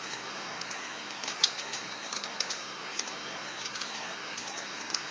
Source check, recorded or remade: remade